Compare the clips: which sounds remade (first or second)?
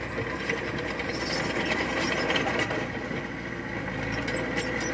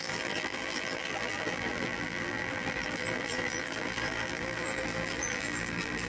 second